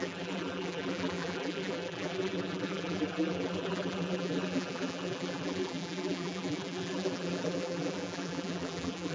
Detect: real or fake fake